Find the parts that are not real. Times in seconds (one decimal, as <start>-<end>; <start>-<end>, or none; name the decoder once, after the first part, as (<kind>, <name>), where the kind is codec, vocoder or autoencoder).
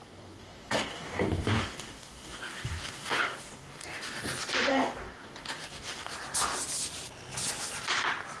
0.0-4.2 (codec, DAC); 4.7-6.1